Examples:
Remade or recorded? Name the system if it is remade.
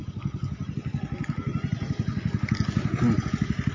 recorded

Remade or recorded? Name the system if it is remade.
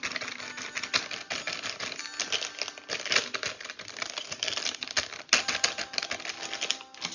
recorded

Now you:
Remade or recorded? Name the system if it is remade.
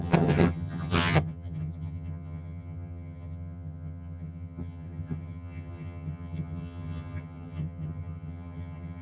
remade, vocoder, HiFi-GAN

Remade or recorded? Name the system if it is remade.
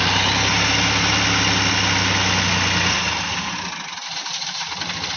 recorded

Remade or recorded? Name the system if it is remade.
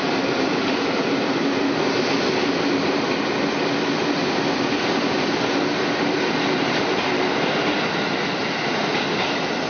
recorded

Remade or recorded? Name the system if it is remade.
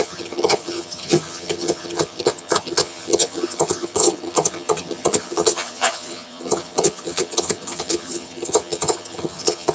remade, vocoder, HiFi-GAN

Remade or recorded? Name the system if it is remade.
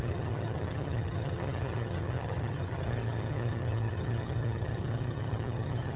remade, vocoder, HiFi-GAN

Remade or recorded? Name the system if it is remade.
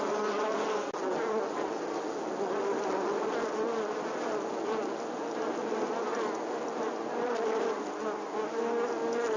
recorded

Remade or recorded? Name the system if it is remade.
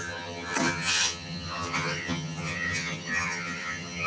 remade, vocoder, HiFi-GAN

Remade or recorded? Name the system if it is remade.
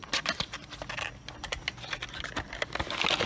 recorded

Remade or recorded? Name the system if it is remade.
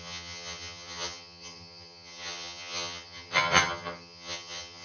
remade, vocoder, HiFi-GAN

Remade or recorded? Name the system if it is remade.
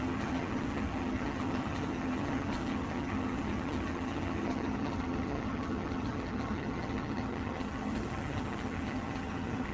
remade, vocoder, HiFi-GAN